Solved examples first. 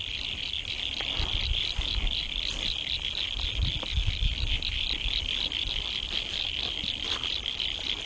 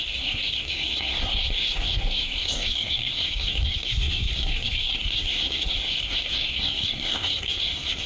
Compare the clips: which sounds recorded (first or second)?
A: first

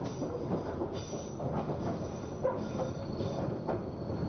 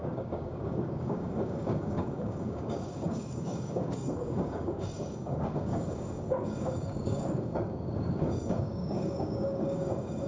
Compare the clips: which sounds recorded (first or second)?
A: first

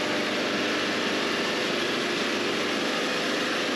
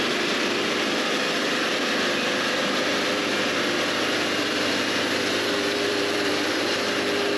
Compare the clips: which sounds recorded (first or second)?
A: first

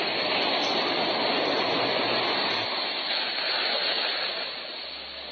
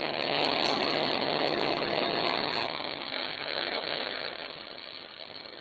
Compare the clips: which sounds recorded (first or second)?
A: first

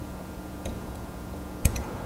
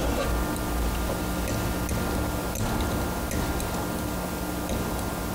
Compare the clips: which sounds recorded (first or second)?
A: second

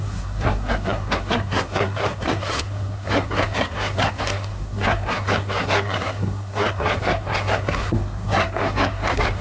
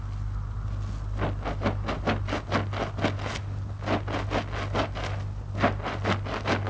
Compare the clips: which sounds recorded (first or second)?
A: second